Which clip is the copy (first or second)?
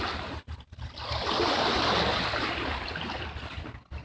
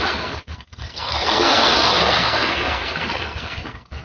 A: second